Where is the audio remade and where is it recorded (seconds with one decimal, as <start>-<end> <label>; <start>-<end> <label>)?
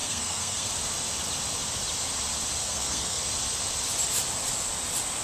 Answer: 0.0-0.7 remade; 0.7-2.6 recorded; 2.6-3.2 remade; 3.2-5.2 recorded